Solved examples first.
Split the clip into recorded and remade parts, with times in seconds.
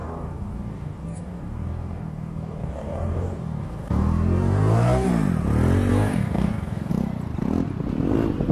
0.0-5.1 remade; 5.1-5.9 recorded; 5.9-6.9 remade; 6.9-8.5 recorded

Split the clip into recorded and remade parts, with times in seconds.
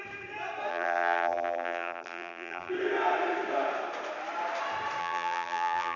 0.0-0.7 recorded; 0.7-2.7 remade; 2.7-5.0 recorded; 5.0-6.0 remade